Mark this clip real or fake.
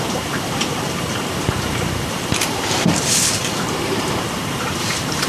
fake